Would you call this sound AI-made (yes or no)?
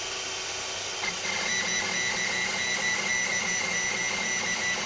no